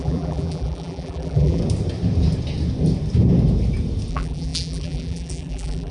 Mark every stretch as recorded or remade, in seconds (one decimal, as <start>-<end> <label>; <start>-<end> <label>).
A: 0.0-1.6 remade; 1.6-4.1 recorded; 4.1-5.9 remade